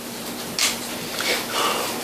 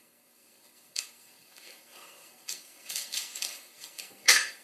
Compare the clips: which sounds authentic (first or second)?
first